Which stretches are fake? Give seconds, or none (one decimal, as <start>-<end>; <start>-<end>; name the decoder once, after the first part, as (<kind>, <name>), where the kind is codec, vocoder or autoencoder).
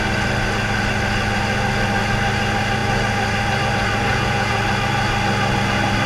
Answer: 4.1-4.6 (vocoder, Vocos)